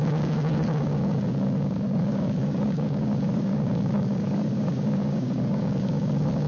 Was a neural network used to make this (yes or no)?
yes